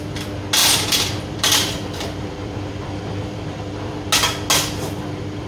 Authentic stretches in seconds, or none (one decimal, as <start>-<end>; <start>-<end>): 0.0-0.6; 3.9-5.5